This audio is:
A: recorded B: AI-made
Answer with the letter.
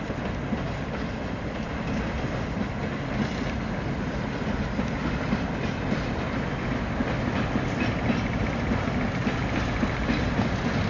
A